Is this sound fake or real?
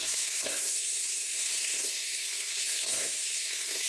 fake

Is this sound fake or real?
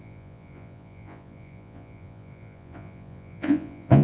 fake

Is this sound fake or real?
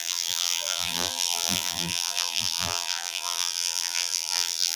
fake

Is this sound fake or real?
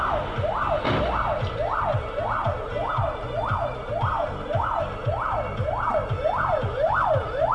real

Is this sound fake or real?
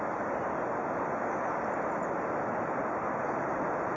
real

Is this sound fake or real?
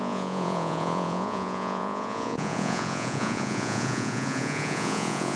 fake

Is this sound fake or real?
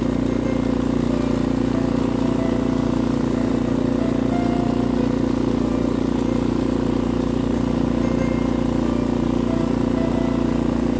real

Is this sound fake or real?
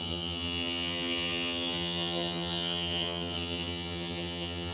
fake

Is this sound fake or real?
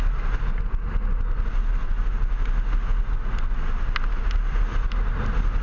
real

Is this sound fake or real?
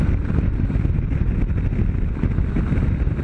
real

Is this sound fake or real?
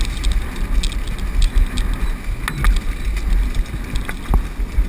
real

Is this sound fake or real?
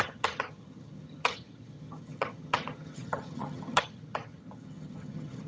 fake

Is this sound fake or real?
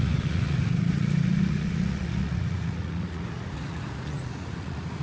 fake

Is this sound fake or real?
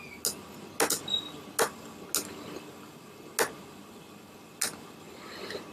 real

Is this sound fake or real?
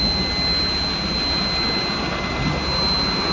real